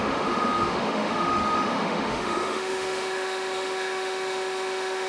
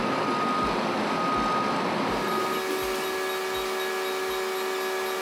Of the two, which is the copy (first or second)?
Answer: first